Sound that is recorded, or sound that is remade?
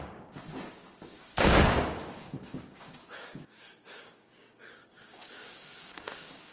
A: remade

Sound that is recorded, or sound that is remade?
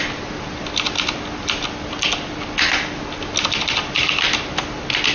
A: recorded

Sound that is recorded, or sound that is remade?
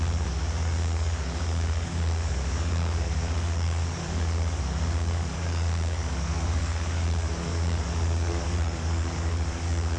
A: remade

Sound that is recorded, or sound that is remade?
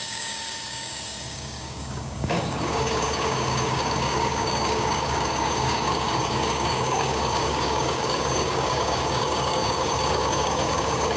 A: remade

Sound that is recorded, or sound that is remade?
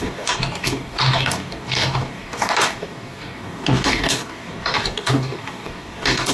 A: remade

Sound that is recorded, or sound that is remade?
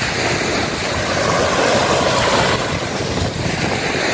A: recorded